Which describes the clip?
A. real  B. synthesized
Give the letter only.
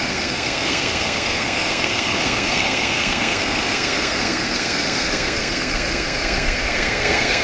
B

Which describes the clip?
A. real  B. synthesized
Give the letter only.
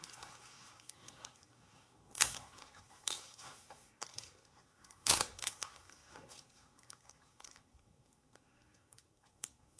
B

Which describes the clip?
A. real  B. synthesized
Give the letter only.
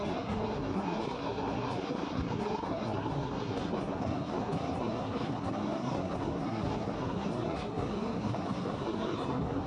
B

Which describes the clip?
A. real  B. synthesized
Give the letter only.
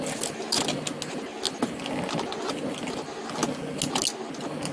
A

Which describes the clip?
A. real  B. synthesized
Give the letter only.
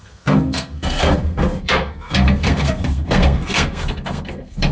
B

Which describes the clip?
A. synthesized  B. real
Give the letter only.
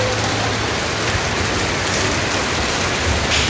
B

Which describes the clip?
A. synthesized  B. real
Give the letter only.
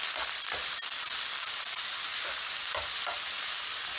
B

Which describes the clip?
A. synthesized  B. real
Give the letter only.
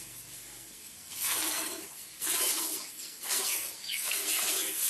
A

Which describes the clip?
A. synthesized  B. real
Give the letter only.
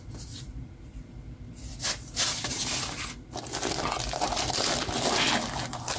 B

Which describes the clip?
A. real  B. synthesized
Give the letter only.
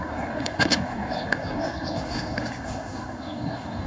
B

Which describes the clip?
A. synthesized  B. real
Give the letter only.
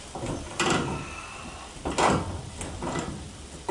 B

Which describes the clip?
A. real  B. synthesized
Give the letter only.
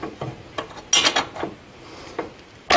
A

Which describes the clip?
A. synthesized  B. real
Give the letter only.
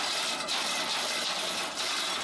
B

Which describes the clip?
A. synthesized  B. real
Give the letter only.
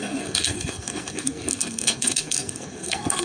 A